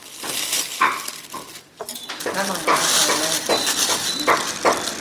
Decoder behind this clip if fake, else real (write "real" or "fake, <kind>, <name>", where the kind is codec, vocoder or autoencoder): real